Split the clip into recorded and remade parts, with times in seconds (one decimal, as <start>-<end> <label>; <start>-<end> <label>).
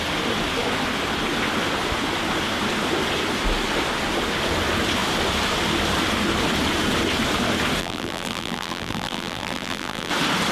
0.0-7.8 recorded; 7.8-10.1 remade; 10.1-10.5 recorded